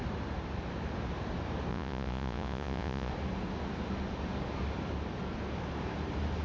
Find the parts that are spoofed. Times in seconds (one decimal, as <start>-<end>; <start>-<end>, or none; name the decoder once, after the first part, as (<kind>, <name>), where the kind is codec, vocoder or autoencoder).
1.7-3.1 (vocoder, Vocos)